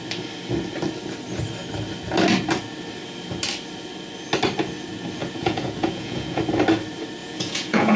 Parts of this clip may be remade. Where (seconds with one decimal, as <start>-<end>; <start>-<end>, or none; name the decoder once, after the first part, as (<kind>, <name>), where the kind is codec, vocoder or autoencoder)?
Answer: 5.2-6.4 (vocoder, Vocos); 7.2-8.0